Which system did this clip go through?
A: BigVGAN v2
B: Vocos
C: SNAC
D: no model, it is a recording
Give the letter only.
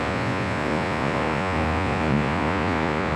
B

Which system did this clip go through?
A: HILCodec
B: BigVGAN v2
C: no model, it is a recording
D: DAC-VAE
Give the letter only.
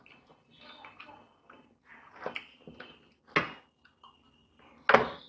C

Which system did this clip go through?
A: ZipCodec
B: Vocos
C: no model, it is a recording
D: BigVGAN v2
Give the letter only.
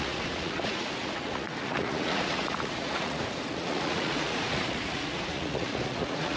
B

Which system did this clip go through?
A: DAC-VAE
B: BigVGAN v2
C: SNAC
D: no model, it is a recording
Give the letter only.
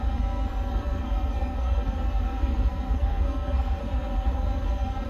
C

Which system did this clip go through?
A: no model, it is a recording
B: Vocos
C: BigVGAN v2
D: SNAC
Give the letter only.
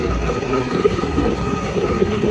D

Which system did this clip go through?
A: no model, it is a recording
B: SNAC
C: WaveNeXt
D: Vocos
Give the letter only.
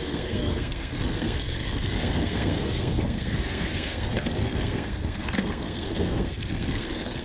B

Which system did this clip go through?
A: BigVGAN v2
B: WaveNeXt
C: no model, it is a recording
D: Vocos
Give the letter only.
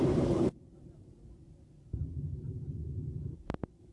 A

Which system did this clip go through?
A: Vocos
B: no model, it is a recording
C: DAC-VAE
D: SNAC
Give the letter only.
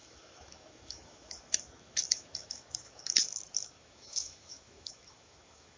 C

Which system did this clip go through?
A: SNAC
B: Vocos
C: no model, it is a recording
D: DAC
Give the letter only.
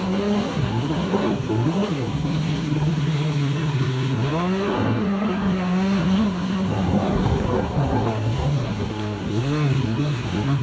A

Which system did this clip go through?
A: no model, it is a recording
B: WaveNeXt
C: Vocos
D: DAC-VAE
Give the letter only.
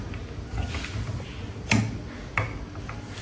A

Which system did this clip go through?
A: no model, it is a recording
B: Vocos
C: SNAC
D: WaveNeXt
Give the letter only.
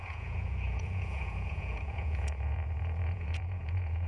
B